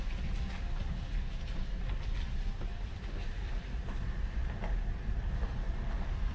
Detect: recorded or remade recorded